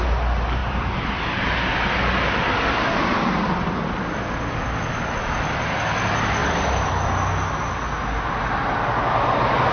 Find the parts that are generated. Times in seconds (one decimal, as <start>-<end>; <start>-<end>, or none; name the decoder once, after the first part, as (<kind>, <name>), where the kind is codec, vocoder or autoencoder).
0.6-1.2 (vocoder, BigVGAN v2); 1.7-4.5; 6.4-6.9